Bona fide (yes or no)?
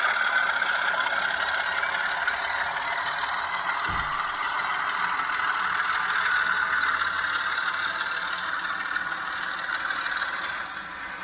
yes